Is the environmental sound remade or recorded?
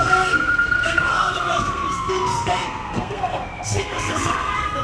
remade